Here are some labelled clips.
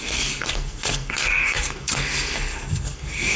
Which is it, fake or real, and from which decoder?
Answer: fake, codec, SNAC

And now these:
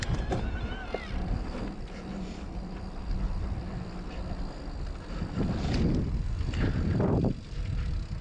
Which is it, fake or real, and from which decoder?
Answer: real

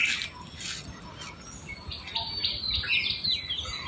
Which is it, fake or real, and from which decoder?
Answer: real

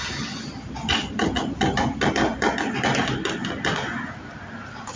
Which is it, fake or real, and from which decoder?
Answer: real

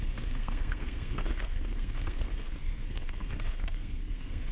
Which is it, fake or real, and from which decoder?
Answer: fake, codec, SNAC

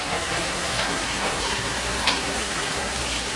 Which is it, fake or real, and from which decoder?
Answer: fake, codec, SNAC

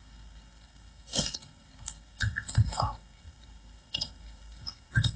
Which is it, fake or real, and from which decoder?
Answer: fake, codec, SNAC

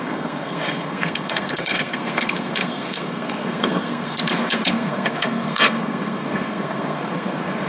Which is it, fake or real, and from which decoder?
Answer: fake, codec, SNAC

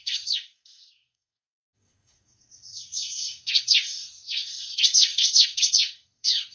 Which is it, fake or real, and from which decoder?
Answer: fake, codec, SNAC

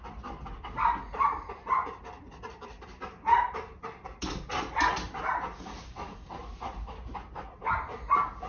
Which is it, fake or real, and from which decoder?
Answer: real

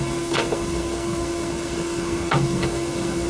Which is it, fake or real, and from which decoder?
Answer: fake, codec, SNAC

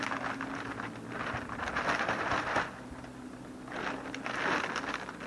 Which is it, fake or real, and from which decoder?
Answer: real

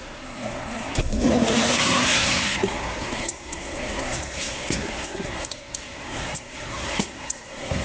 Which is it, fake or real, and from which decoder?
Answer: fake, codec, SNAC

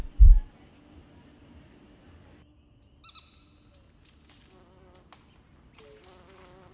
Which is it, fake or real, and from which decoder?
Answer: real